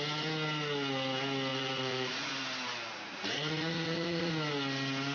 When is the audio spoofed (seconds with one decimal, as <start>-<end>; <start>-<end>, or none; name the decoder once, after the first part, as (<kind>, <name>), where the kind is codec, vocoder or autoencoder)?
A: 1.5-2.3 (vocoder, Vocos); 2.9-4.3